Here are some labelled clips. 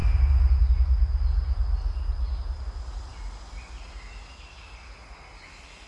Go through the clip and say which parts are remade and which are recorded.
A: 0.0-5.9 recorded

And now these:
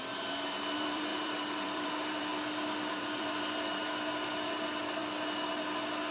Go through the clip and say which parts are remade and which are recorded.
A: 0.0-2.3 remade; 2.3-2.9 recorded; 2.9-5.0 remade; 5.0-6.1 recorded

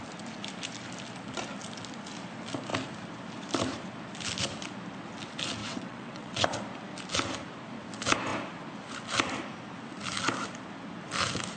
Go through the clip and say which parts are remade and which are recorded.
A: 0.0-5.6 recorded; 5.6-6.5 remade; 6.5-11.6 recorded

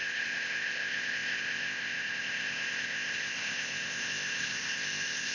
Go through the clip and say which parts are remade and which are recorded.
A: 0.0-5.3 remade

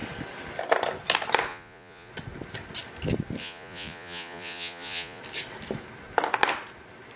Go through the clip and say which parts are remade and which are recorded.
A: 0.0-1.5 recorded; 1.5-2.1 remade; 2.1-3.4 recorded; 3.4-5.2 remade; 5.2-7.2 recorded

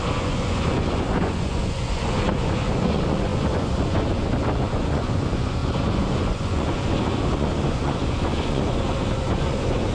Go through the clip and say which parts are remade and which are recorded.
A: 0.0-9.9 remade